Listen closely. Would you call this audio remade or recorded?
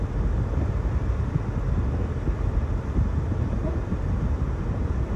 recorded